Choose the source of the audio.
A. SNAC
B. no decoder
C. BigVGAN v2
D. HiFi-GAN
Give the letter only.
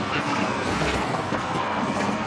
A